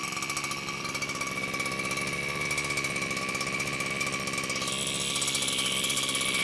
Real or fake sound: real